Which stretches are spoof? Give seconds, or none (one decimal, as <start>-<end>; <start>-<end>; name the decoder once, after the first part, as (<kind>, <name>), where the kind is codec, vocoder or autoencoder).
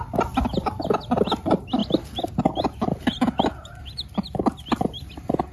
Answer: none